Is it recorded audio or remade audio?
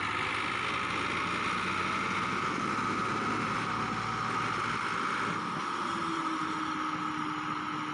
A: recorded